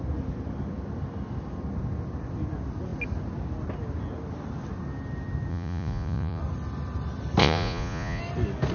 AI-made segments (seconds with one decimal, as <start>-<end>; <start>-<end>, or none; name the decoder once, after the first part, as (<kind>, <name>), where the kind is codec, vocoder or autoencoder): 5.5-6.4 (vocoder, Vocos); 7.4-8.2

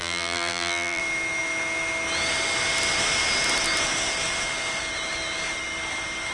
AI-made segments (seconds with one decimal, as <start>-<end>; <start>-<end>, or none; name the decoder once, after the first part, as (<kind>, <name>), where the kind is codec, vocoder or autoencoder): 0.0-1.0 (vocoder, BigVGAN v2)

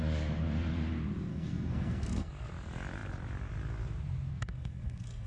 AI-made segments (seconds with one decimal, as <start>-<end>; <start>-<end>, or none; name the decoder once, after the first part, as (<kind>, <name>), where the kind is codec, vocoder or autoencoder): 1.3-2.3 (codec, SNAC); 4.3-5.3

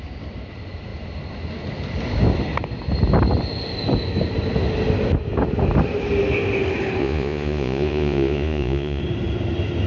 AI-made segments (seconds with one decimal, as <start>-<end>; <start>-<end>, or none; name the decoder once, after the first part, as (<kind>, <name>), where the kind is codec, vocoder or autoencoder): 7.0-9.0 (vocoder, Vocos)

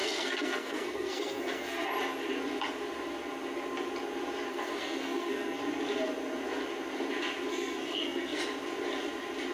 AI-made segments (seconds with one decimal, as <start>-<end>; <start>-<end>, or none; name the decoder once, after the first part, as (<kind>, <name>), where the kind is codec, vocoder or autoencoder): 0.0-1.9 (codec, SNAC); 4.5-5.6; 7.5-8.4

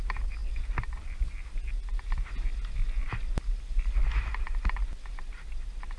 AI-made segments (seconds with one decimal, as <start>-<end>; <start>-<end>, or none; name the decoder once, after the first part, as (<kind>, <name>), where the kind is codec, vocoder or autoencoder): none